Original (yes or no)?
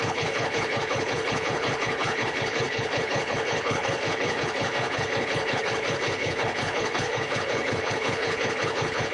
no